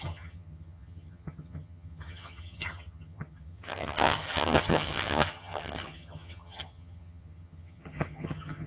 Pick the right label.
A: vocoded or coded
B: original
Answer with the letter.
A